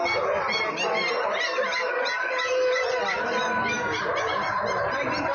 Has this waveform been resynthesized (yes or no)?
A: no